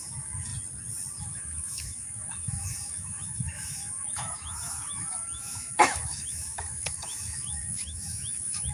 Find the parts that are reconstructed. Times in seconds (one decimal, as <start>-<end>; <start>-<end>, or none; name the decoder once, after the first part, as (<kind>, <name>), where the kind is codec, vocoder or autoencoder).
0.0-0.5 (autoencoder, DAC-VAE); 1.2-8.7